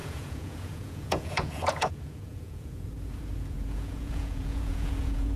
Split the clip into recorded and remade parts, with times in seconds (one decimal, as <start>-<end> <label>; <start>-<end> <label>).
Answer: 0.0-5.4 remade